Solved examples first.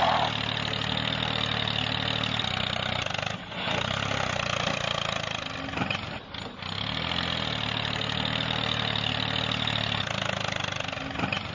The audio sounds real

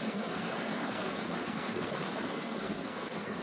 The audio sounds fake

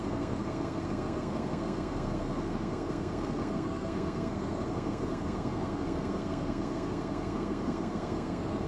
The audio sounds fake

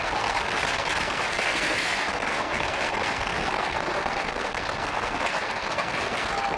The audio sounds fake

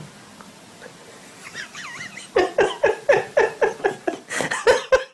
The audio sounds real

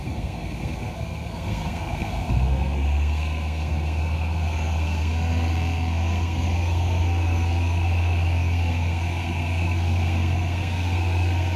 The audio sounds fake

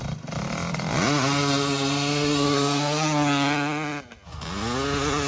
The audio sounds real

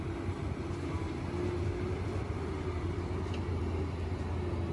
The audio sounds real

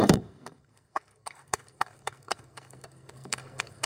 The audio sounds fake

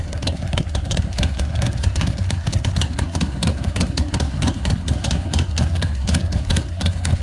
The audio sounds fake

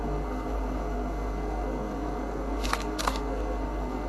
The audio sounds fake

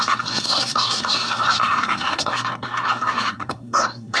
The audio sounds fake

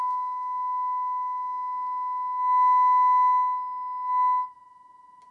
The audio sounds real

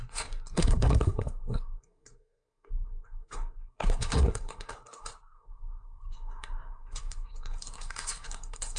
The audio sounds fake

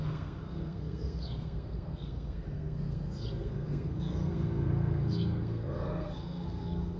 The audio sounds fake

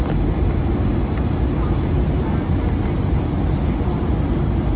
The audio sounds real